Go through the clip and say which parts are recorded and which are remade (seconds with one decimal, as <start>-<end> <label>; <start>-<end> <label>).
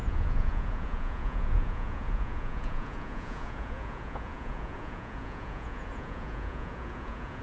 0.0-7.4 remade